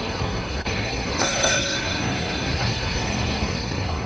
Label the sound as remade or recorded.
remade